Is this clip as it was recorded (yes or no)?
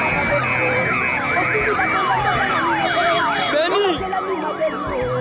yes